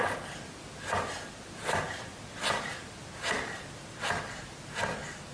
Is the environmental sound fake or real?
real